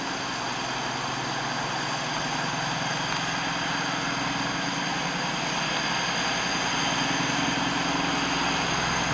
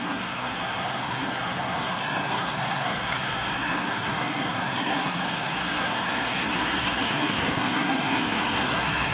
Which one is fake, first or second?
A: second